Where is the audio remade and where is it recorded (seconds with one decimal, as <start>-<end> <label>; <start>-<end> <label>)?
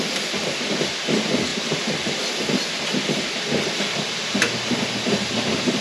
0.0-5.8 recorded